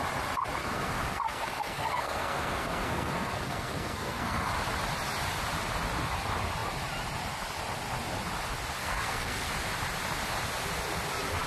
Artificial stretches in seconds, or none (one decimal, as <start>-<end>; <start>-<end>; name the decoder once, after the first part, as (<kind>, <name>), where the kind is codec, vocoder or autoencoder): 0.6-4.5 (codec, SNAC); 8.8-9.5